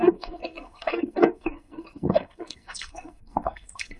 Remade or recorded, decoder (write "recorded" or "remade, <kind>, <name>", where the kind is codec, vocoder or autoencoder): remade, codec, SNAC